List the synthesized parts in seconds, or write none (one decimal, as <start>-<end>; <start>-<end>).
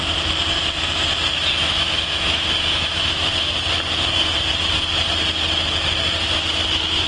1.6-3.3